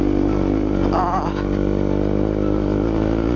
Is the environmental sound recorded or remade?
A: recorded